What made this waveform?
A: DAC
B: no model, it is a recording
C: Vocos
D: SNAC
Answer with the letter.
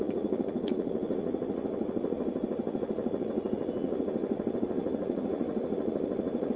C